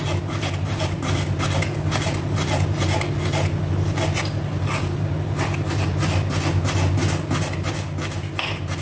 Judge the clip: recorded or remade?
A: recorded